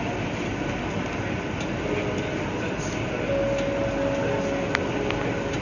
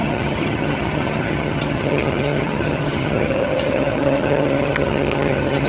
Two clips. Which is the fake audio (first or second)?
second